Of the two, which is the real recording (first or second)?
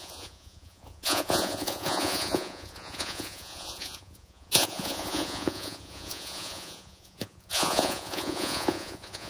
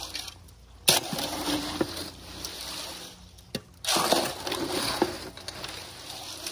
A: second